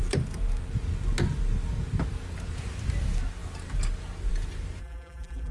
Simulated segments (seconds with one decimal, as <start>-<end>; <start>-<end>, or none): 4.8-5.5